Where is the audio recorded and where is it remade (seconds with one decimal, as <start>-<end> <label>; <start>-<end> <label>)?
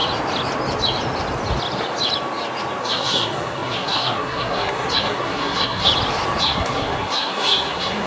0.0-2.8 recorded; 2.8-5.9 remade; 5.9-6.4 recorded; 6.4-8.1 remade